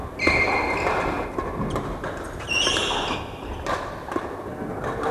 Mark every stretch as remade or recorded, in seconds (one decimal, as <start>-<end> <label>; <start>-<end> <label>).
0.0-5.1 recorded